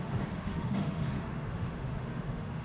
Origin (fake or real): fake